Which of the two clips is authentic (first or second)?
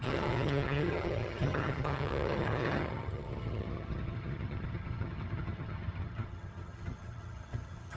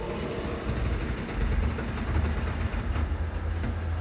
second